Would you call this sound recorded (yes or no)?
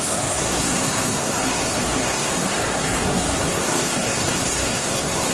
no